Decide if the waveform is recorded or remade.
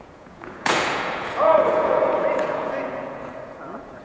remade